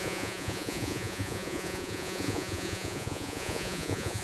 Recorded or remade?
remade